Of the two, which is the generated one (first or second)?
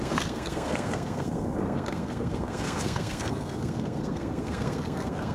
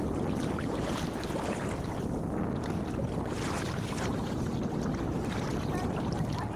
first